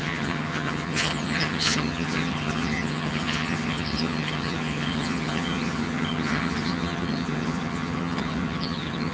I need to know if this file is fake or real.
fake